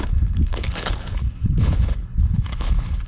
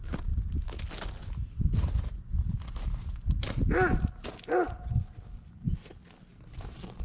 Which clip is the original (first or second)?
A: second